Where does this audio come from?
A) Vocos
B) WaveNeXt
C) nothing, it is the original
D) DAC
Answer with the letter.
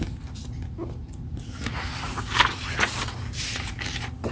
C